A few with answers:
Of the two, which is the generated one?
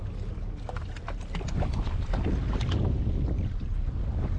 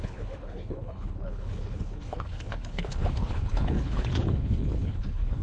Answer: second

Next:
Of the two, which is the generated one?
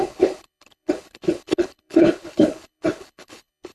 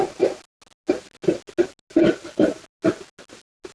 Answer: first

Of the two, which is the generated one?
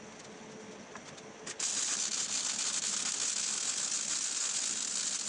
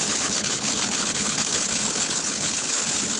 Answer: second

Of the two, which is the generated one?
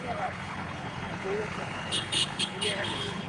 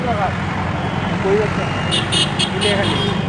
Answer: first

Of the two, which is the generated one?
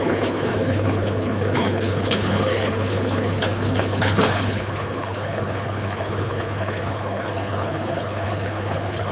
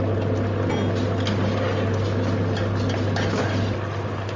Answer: first